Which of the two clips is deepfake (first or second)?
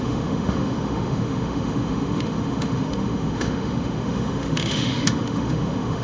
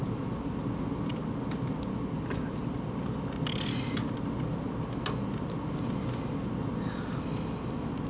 first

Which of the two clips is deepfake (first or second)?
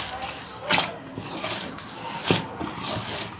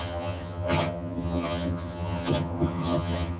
second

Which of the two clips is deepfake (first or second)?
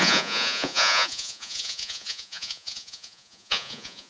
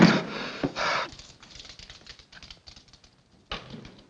first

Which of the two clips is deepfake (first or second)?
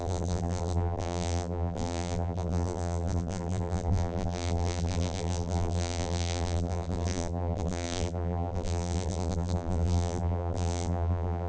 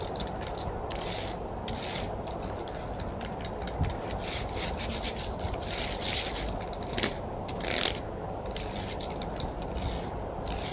first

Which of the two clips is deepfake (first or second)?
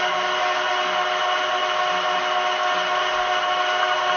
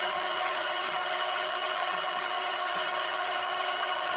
second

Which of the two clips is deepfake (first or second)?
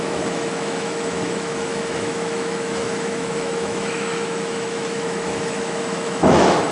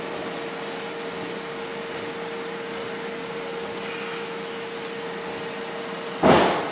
first